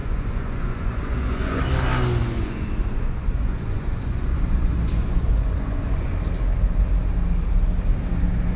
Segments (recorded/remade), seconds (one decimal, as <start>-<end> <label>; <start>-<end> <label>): 0.0-1.6 remade; 1.6-2.2 recorded; 2.2-6.1 remade; 6.1-8.6 recorded